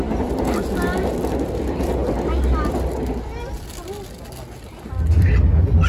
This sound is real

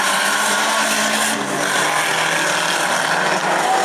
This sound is real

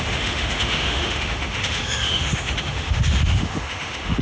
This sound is fake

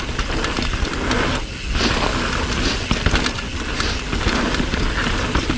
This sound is real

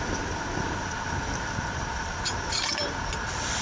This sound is real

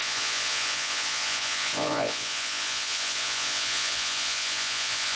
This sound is fake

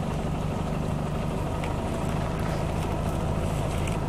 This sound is real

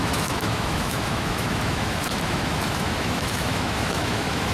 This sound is fake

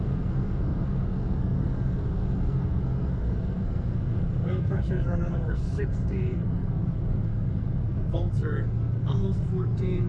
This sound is fake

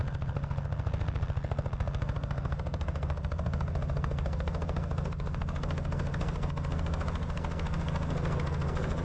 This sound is fake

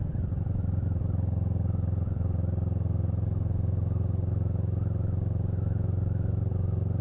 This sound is real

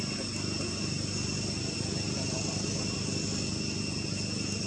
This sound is real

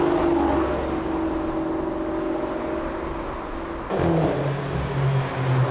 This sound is real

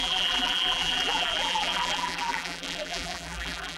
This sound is fake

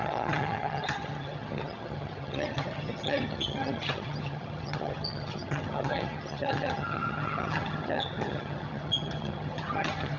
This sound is fake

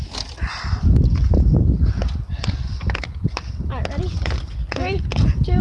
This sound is real